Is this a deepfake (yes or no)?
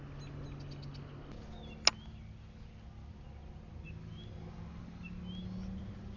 no